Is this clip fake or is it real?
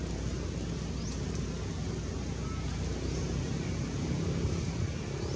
real